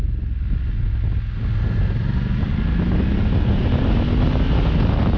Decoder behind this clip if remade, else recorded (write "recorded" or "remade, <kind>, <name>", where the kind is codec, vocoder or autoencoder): recorded